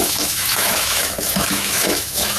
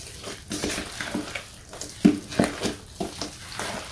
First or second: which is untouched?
second